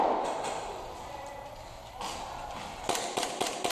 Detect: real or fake real